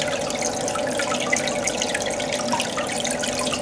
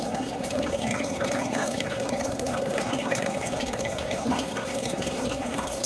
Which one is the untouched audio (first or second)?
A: first